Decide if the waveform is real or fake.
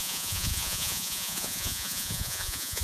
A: fake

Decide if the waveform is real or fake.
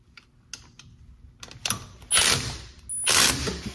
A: real